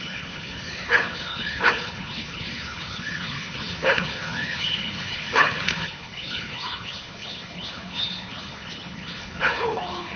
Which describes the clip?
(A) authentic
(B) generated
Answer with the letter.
B